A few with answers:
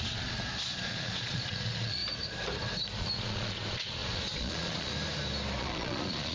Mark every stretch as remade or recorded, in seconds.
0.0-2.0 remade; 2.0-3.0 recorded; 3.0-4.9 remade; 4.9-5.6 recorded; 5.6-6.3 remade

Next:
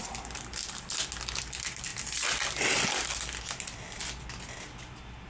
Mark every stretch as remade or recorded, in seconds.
0.0-5.3 recorded

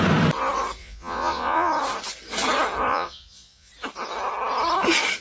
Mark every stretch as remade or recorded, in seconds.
0.0-0.8 recorded; 0.8-1.7 remade; 1.7-2.9 recorded; 2.9-3.7 remade; 3.7-5.2 recorded

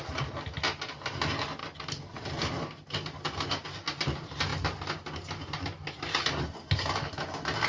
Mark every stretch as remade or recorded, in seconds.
0.0-1.6 recorded; 1.6-3.5 remade; 3.5-7.7 recorded

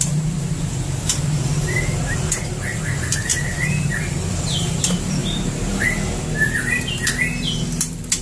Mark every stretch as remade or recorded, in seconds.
0.0-8.2 remade

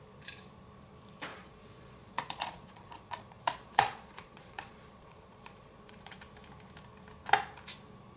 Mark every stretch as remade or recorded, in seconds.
0.0-1.3 recorded; 1.3-6.2 remade; 6.2-8.2 recorded